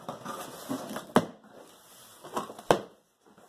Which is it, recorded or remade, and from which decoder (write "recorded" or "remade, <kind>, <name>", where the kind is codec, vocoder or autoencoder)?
recorded